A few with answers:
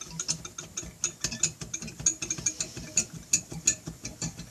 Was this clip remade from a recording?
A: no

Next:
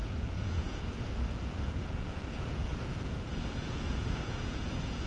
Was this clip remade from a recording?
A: yes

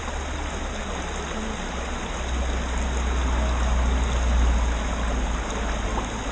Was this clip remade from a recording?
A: no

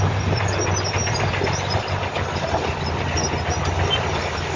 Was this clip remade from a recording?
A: yes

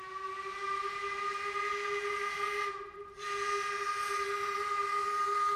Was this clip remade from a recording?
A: no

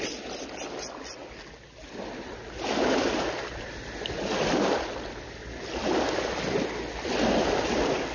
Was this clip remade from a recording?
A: no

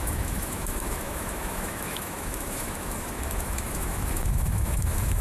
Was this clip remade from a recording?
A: yes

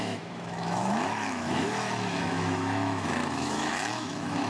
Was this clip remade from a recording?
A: yes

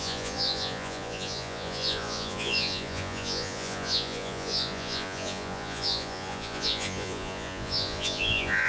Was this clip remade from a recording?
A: yes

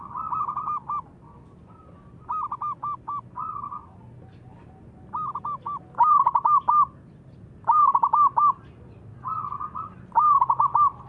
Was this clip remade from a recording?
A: no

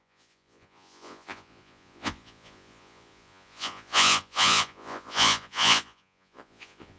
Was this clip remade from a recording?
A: yes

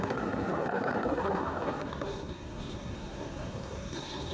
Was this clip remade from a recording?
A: yes